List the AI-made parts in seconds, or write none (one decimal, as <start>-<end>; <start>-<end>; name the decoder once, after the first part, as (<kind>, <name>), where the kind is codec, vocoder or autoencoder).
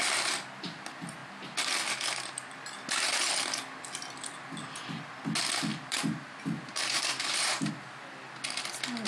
5.7-7.7 (vocoder, BigVGAN v2)